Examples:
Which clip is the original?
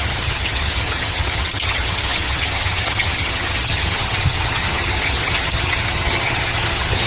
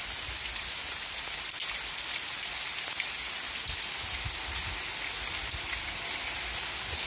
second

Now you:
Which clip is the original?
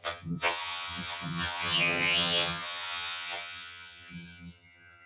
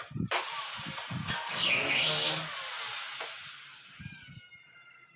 second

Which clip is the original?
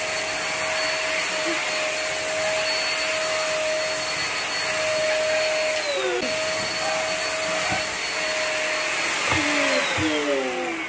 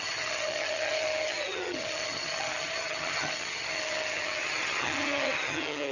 first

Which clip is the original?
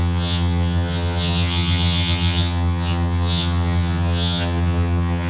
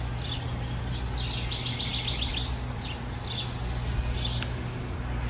second